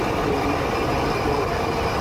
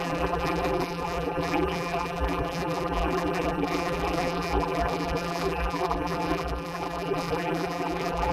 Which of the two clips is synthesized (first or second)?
second